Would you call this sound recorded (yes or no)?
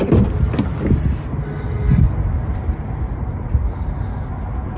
yes